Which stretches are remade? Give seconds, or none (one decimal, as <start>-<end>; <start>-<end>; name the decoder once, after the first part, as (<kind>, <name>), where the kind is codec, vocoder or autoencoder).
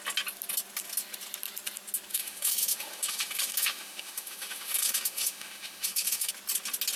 2.1-6.3 (autoencoder, DAC-VAE)